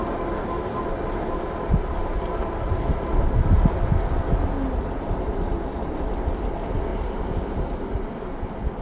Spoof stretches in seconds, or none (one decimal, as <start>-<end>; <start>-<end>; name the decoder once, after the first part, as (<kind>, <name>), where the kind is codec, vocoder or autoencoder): 6.9-8.1 (vocoder, BigVGAN v2)